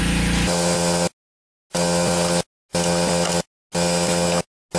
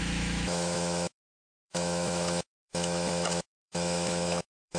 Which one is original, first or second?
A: first